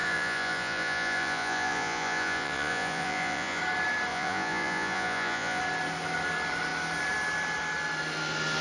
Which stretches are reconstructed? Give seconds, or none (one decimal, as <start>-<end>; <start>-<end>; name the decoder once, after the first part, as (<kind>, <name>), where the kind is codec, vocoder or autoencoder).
0.0-3.6 (vocoder, Vocos); 4.1-5.6